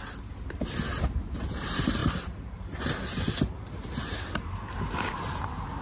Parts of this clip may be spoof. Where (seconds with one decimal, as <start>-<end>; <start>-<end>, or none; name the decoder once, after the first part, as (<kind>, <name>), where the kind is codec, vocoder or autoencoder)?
2.0-5.8 (vocoder, BigVGAN v2)